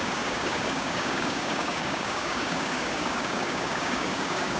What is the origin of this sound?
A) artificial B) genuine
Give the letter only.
A